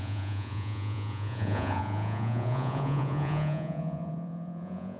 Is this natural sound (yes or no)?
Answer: no